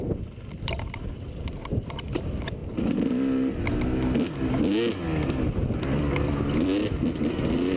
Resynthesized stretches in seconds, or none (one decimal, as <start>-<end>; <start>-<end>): none

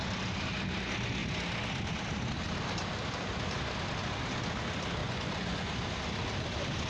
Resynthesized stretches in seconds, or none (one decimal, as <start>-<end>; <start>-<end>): 5.0-5.7

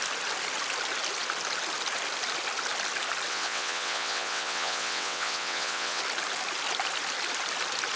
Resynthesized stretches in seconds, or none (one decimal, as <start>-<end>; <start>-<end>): 3.3-6.0

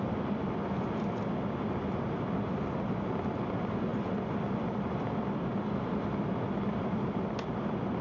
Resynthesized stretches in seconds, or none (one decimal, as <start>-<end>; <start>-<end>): none

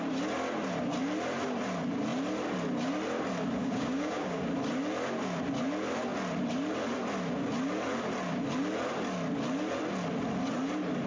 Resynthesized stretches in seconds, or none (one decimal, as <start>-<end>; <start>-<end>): 3.6-4.4